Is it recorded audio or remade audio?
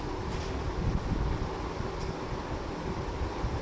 recorded